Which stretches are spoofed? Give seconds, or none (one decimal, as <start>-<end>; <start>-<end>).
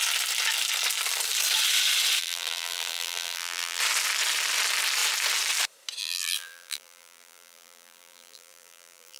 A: 2.2-3.8; 6.0-9.2